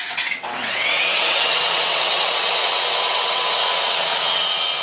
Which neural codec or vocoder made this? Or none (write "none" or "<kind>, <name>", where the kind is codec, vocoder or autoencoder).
vocoder, WaveNeXt